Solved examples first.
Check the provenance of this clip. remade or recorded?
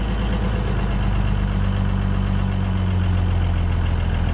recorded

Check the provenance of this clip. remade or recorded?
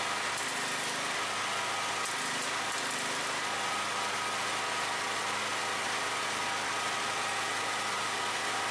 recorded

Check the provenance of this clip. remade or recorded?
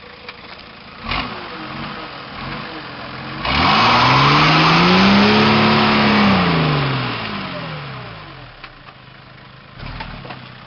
recorded